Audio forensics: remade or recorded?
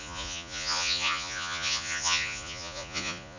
remade